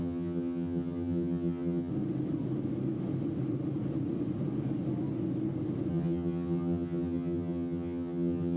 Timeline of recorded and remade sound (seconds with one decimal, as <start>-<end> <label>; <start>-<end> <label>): 0.0-1.9 remade; 1.9-5.9 recorded; 5.9-8.6 remade